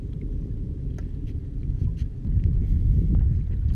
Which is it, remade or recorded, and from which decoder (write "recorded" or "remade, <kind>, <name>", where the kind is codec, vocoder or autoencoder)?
recorded